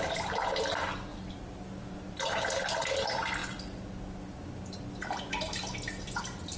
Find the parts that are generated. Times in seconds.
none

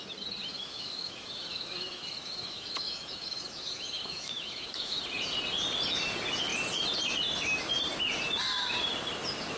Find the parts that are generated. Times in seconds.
0.5-5.0

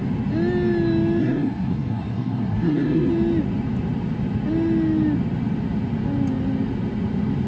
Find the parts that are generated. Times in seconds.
1.2-3.1